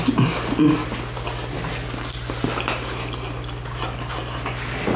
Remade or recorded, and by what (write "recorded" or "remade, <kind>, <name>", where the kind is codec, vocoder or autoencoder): recorded